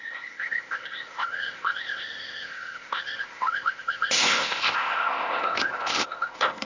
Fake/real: fake